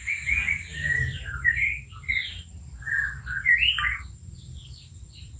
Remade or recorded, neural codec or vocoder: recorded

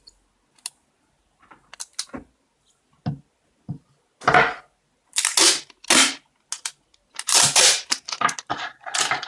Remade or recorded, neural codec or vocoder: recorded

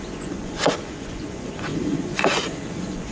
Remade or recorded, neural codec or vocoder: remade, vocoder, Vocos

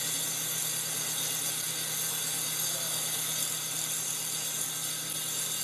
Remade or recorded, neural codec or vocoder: recorded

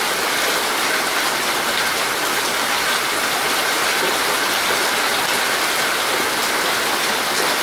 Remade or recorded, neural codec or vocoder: recorded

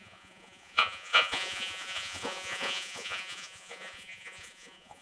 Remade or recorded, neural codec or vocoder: remade, vocoder, Vocos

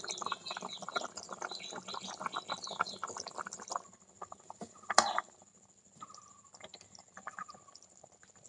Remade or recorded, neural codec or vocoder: recorded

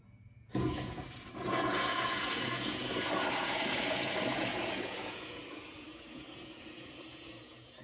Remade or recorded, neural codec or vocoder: remade, vocoder, Vocos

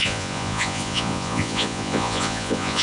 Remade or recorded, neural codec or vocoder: remade, vocoder, Vocos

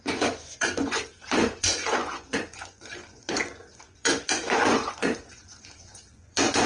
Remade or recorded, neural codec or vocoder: remade, vocoder, Vocos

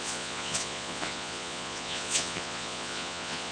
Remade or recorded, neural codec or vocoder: remade, vocoder, Vocos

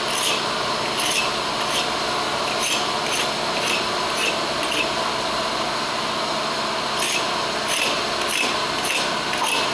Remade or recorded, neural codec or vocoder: recorded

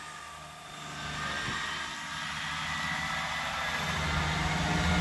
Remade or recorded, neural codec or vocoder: recorded